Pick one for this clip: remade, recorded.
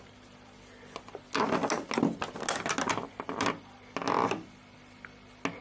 recorded